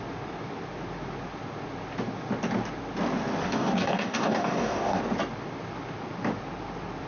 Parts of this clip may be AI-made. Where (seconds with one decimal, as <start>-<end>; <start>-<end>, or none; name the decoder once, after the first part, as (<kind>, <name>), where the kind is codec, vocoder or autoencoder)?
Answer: 3.4-5.0 (codec, DAC)